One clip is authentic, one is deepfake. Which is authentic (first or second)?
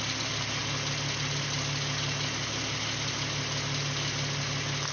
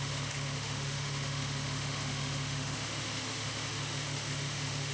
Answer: first